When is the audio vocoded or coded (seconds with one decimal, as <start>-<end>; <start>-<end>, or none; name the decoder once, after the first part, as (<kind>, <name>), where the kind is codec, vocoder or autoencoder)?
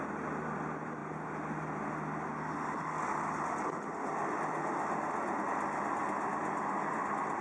none